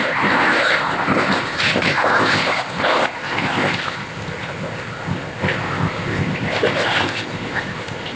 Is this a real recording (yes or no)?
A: no